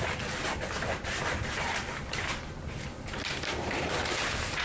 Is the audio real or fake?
real